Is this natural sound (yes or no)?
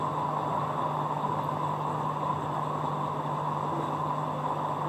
yes